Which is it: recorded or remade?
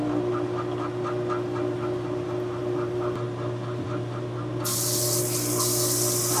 recorded